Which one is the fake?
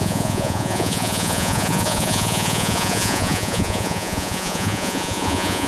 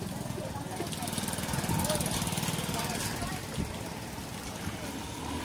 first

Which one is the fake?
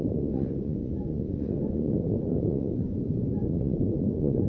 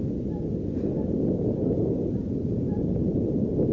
first